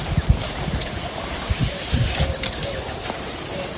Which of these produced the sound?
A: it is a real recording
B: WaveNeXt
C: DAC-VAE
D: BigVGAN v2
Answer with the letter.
A